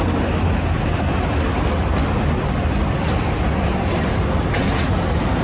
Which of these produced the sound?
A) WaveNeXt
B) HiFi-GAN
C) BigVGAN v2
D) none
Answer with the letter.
D